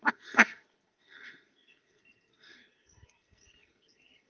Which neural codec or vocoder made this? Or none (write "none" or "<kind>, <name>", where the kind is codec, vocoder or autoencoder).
codec, SNAC